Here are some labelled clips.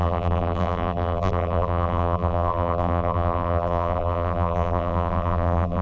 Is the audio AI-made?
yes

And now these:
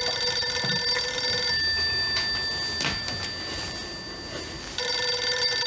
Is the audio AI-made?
no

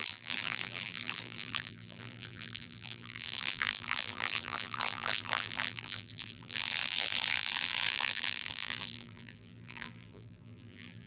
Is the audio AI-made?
yes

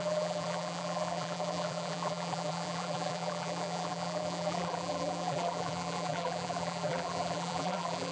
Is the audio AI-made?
yes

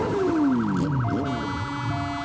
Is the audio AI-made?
no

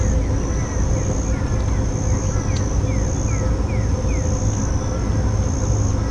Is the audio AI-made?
no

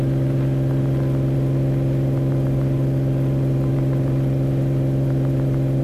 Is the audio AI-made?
yes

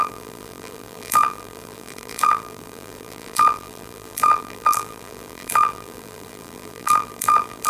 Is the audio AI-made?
yes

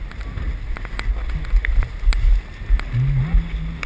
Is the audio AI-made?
no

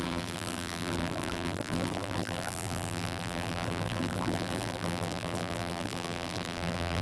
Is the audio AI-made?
yes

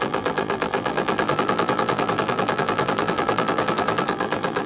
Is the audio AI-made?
yes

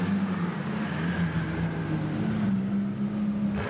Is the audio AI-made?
no